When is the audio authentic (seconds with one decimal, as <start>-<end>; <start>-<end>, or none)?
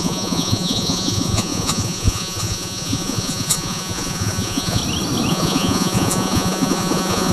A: 4.8-5.3